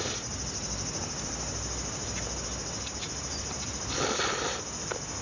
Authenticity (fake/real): real